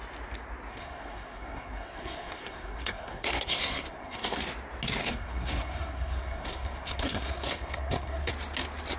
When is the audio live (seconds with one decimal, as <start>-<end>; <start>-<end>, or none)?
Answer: 0.0-0.7; 4.4-5.0; 8.3-9.0